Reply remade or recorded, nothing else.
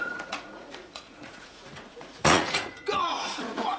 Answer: remade